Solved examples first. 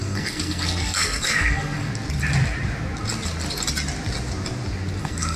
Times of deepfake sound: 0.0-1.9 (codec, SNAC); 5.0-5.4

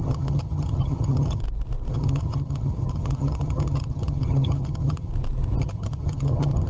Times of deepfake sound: 0.0-1.4 (vocoder, HiFi-GAN); 1.9-5.1; 5.6-6.7

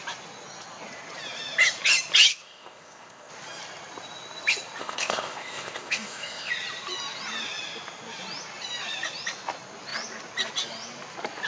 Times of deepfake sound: 2.3-3.3 (codec, ZipCodec); 4.8-6.5

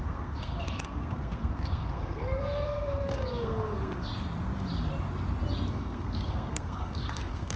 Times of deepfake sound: 0.0-4.1 (codec, SNAC); 5.7-7.6

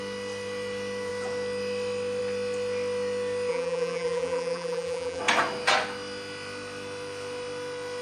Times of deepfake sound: 3.5-5.2 (vocoder, BigVGAN v2)